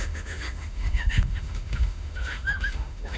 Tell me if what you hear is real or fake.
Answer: fake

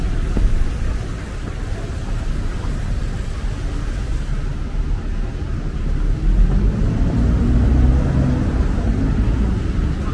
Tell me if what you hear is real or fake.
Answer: real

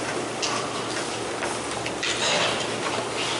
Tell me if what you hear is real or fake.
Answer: real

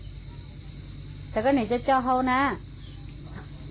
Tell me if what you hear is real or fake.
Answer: real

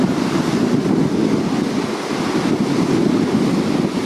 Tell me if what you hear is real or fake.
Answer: real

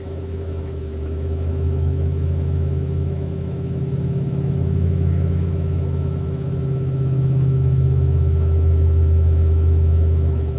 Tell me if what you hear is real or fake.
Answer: fake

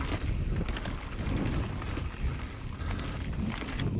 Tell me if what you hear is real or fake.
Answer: real